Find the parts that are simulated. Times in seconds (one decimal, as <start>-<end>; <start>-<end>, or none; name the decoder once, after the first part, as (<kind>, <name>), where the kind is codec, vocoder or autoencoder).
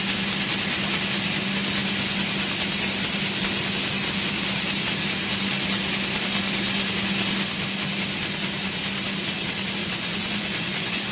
9.8-11.1 (vocoder, Vocos)